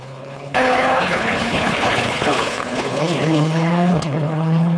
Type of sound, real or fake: fake